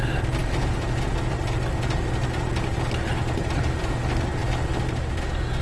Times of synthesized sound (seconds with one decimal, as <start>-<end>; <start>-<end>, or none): none

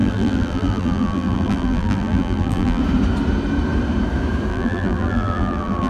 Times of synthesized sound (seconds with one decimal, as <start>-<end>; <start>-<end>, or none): 0.0-2.8; 4.5-5.9

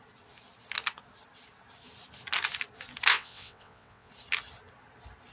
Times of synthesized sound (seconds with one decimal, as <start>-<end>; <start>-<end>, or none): 3.1-4.1

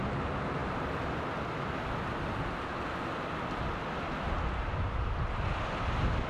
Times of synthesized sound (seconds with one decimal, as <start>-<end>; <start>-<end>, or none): none

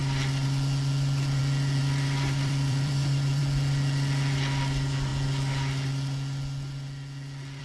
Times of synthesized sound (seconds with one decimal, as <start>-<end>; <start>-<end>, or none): 1.8-3.4

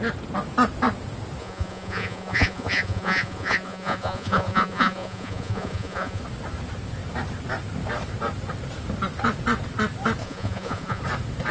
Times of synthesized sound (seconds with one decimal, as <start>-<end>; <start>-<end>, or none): 1.4-6.2; 10.2-11.0

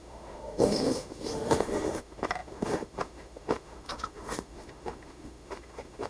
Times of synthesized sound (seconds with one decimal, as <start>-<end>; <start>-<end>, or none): 0.0-6.1

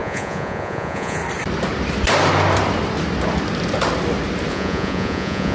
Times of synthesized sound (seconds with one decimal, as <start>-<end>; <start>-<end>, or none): 0.0-1.2; 4.5-5.5